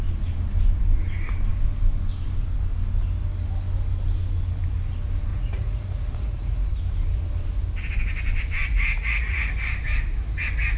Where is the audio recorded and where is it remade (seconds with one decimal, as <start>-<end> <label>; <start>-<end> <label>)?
0.0-5.3 recorded; 5.3-6.7 remade; 6.7-8.7 recorded; 8.7-9.5 remade; 9.5-10.8 recorded

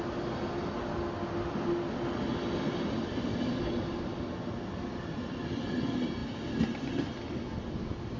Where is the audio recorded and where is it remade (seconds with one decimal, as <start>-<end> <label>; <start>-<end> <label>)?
0.0-8.2 recorded

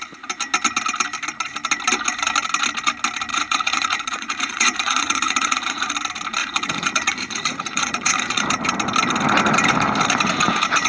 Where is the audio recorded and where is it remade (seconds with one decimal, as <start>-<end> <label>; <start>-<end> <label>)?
0.0-3.3 recorded; 3.3-5.9 remade; 5.9-6.4 recorded; 6.4-8.6 remade; 8.6-10.9 recorded

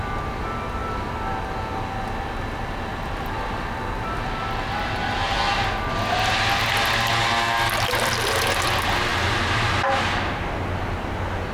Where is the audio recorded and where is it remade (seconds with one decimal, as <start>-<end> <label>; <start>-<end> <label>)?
0.0-11.5 recorded

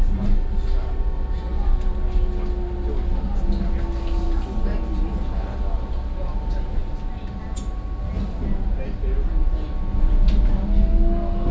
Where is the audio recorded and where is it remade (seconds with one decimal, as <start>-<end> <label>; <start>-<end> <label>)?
0.0-11.5 recorded

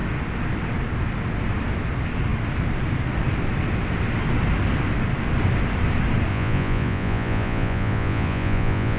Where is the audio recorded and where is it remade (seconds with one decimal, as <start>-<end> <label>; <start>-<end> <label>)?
0.0-6.3 recorded; 6.3-9.0 remade